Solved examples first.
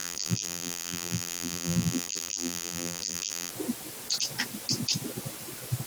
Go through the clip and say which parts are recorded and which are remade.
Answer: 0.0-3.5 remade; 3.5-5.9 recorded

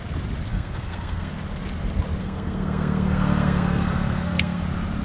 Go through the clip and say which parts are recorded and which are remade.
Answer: 0.0-0.5 recorded; 0.5-1.3 remade; 1.3-2.2 recorded; 2.2-4.6 remade; 4.6-5.0 recorded

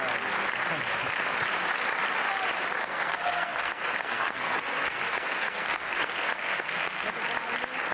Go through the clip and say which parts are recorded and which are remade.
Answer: 0.0-2.8 recorded; 2.8-7.1 remade; 7.1-7.9 recorded

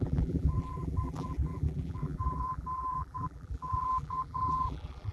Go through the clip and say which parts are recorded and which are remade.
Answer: 0.0-5.1 remade

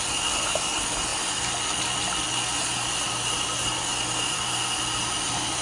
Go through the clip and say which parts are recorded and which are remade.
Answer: 0.0-5.6 recorded

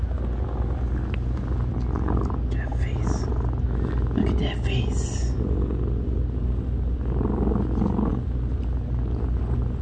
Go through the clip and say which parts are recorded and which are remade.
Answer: 0.0-9.8 recorded